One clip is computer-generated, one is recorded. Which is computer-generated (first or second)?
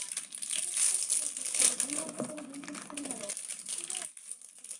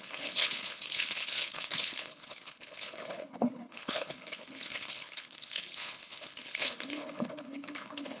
second